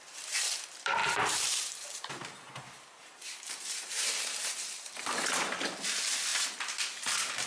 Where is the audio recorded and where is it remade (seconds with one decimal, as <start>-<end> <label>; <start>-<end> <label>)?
0.0-1.0 recorded; 1.0-5.5 remade; 5.5-7.5 recorded